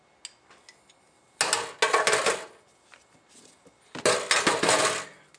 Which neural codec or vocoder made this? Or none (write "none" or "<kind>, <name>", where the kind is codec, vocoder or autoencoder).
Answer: none